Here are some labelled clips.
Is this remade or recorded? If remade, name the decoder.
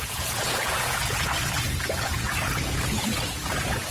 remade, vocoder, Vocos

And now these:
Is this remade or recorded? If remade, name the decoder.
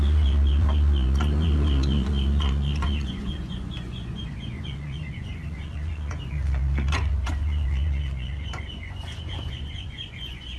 remade, vocoder, Vocos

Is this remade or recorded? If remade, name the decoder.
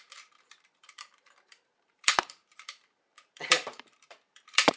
remade, vocoder, BigVGAN v2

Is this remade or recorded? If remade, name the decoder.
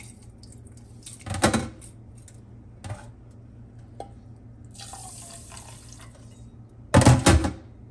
recorded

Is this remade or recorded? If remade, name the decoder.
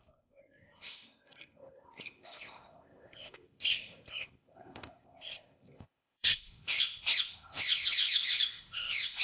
remade, codec, ZipCodec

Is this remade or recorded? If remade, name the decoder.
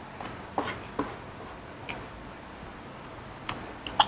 recorded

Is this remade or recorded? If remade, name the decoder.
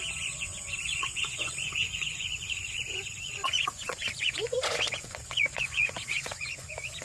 remade, vocoder, Vocos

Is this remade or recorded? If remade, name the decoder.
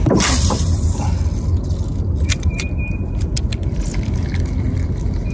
recorded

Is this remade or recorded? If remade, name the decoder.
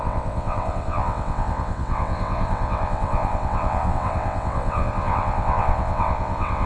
remade, vocoder, WaveNeXt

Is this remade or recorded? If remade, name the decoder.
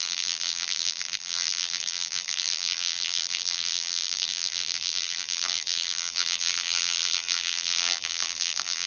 remade, vocoder, BigVGAN v2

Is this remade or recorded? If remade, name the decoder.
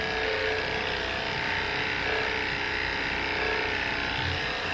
recorded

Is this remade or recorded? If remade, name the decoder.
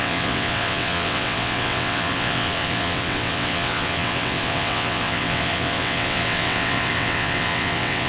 remade, vocoder, WaveNeXt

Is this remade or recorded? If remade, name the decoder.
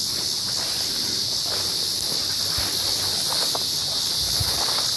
recorded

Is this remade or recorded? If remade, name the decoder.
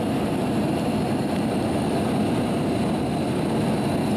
recorded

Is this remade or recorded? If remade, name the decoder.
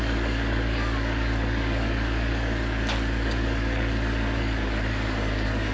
remade, codec, DAC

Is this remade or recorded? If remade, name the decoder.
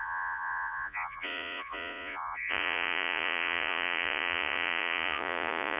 remade, vocoder, Vocos